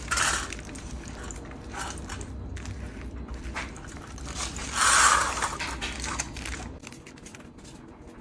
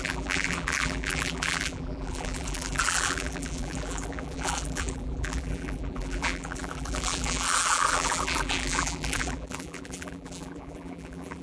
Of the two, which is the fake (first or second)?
second